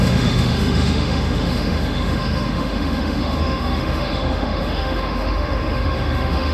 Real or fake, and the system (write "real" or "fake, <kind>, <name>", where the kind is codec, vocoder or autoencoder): fake, autoencoder, DAC-VAE